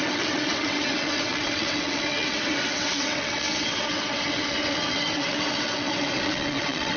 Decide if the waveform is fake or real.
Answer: fake